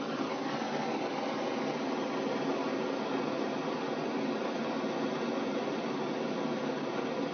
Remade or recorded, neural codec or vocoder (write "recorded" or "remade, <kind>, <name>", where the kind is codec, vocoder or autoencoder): recorded